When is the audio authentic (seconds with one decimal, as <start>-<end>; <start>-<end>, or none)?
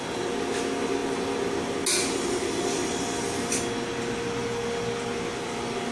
0.0-5.9